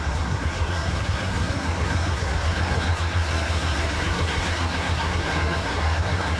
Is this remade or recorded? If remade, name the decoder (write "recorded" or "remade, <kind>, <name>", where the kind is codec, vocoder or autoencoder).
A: remade, codec, SNAC